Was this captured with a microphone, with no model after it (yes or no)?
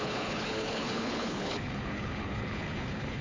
no